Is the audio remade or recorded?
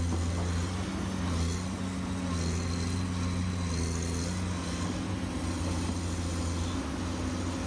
recorded